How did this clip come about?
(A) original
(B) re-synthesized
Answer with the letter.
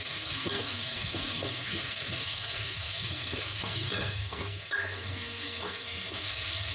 B